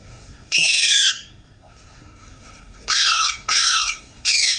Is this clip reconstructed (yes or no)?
yes